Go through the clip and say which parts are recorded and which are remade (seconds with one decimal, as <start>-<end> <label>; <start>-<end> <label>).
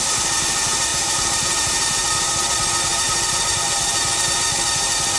0.0-0.9 recorded; 0.9-2.3 remade; 2.3-2.9 recorded; 2.9-4.1 remade; 4.1-5.2 recorded